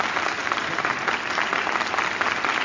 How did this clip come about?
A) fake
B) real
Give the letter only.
B